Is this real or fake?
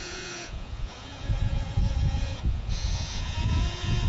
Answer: fake